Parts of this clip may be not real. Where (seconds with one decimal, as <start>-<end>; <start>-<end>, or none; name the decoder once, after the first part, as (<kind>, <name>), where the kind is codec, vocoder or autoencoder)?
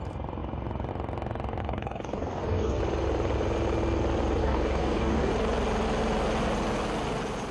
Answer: 1.6-2.8 (codec, DAC); 4.4-5.3